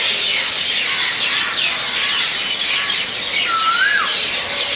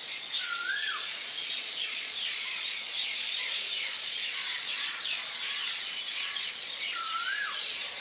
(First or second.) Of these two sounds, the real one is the first